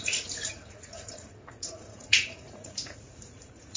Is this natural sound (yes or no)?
no